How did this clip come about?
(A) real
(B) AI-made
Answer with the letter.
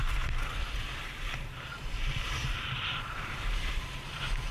B